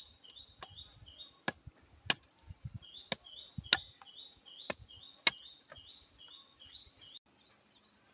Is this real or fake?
real